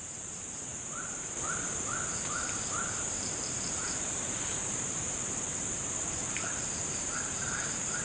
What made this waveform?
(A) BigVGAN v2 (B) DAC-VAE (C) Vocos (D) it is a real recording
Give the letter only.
A